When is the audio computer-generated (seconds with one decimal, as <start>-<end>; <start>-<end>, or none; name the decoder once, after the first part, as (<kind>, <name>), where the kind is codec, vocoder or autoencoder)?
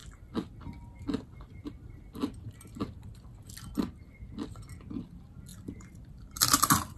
0.0-3.4 (vocoder, BigVGAN v2); 5.5-7.0